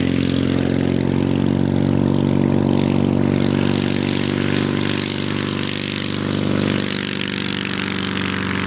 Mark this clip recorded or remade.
recorded